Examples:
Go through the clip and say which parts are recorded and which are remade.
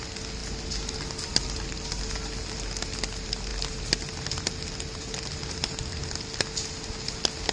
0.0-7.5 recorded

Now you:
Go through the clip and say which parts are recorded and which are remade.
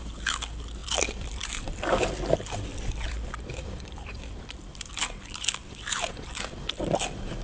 0.0-0.8 recorded; 0.8-2.0 remade; 2.0-2.7 recorded; 2.7-3.6 remade; 3.6-7.4 recorded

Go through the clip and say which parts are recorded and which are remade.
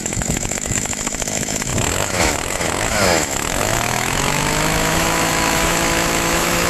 0.0-6.7 remade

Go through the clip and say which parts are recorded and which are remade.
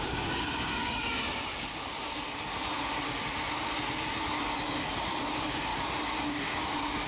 0.0-1.0 remade; 1.0-5.3 recorded; 5.3-5.7 remade; 5.7-6.2 recorded; 6.2-7.1 remade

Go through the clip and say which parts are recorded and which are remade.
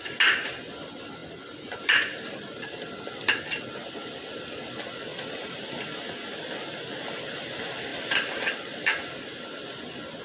0.0-5.1 recorded; 5.1-5.6 remade; 5.6-10.2 recorded